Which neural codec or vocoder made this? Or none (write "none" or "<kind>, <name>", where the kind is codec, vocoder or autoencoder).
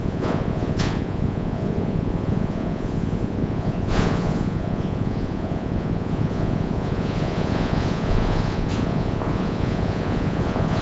vocoder, Vocos